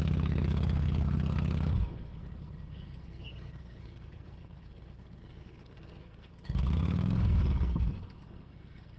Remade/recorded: remade